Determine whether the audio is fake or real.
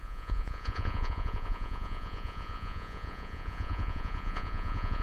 fake